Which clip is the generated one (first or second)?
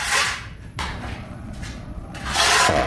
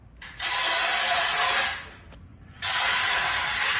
first